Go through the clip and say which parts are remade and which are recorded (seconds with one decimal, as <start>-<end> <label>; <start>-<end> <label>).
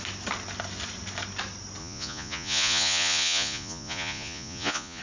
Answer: 0.0-1.8 recorded; 1.8-5.0 remade